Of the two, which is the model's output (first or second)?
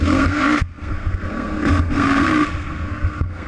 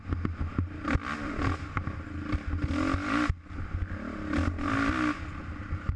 first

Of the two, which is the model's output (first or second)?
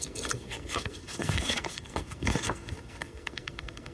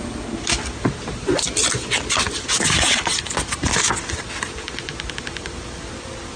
first